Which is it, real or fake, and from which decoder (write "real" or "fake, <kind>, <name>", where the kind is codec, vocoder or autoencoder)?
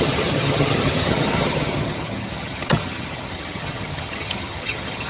fake, vocoder, HiFi-GAN